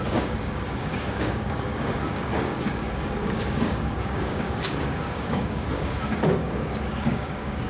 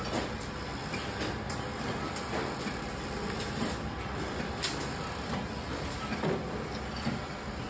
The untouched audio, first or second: second